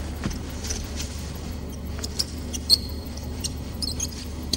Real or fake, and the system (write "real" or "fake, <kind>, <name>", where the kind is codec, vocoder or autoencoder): fake, vocoder, BigVGAN v2